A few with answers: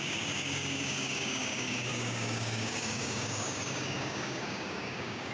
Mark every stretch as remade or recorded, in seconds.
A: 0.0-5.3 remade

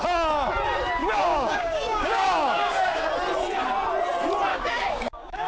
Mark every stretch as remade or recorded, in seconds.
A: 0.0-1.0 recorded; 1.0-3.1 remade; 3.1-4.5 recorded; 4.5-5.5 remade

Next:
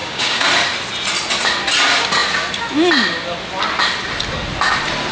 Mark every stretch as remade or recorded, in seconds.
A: 0.0-0.5 remade; 0.5-5.1 recorded